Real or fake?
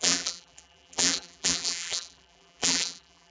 fake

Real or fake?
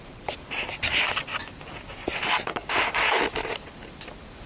real